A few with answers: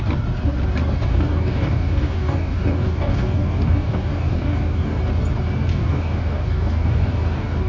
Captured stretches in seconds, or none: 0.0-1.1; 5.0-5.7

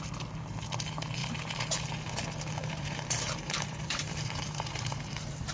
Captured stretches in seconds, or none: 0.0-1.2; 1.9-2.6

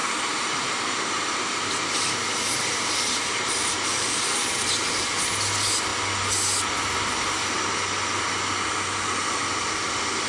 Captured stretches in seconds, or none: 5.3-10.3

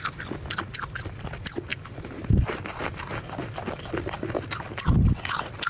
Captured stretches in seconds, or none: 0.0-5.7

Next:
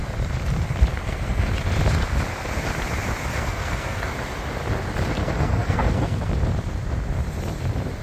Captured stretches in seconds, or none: 0.0-0.9; 1.5-3.3; 4.1-5.2; 6.3-8.0